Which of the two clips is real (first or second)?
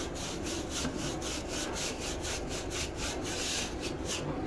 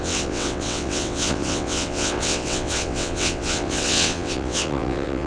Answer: first